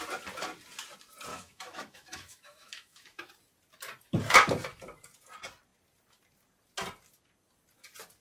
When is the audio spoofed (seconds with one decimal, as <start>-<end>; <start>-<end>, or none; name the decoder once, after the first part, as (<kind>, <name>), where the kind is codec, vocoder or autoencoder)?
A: 1.3-3.3 (autoencoder, DAC-VAE)